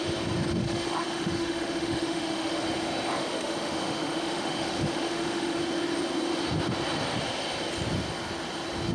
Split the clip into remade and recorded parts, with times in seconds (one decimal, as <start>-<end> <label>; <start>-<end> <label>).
0.0-0.6 recorded; 0.6-2.6 remade; 2.6-3.2 recorded; 3.2-5.6 remade; 5.6-8.9 recorded